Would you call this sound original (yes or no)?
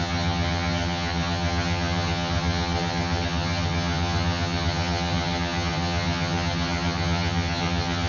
no